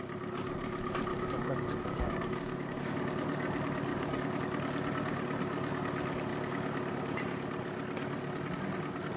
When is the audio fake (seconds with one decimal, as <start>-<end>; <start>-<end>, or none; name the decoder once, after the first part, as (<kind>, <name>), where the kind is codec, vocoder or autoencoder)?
1.1-2.9 (codec, DAC); 3.9-4.4

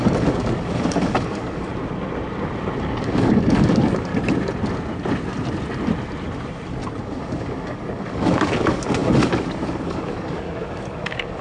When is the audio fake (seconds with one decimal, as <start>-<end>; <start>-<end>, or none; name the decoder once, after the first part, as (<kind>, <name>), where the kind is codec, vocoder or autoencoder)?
0.0-1.7 (codec, DAC); 2.8-4.1; 7.0-11.4

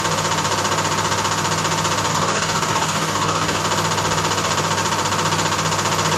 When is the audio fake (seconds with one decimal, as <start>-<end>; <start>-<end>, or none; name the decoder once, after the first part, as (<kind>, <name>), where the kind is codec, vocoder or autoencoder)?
2.1-3.6 (codec, DAC)

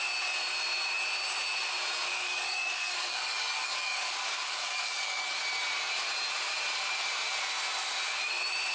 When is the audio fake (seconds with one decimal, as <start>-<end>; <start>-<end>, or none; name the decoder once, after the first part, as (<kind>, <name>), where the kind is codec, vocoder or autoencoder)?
2.1-5.4 (codec, DAC)

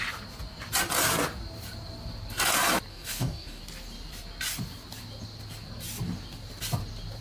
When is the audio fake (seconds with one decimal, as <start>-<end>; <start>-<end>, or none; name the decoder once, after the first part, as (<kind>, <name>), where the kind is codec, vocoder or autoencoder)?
2.9-3.6 (codec, DAC)

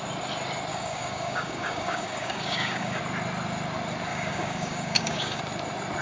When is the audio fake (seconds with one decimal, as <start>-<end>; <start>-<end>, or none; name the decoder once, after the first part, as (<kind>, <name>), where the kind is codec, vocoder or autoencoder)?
0.7-3.0 (codec, DAC); 4.1-5.4

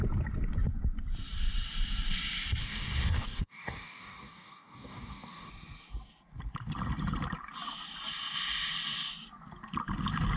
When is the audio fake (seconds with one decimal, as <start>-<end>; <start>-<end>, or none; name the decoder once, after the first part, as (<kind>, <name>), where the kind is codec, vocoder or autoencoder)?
2.6-5.5 (codec, DAC)